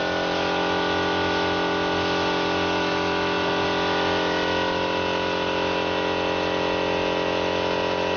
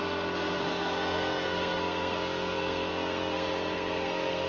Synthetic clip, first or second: second